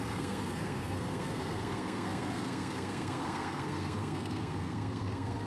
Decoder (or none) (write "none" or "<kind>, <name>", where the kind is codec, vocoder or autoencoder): codec, SNAC